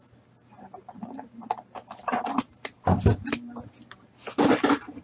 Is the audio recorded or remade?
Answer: recorded